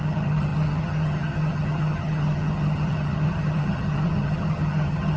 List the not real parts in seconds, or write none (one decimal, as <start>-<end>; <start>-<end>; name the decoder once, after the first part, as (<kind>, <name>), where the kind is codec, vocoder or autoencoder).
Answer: 0.0-5.2 (vocoder, HiFi-GAN)